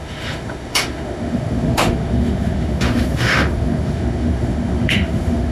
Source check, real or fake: fake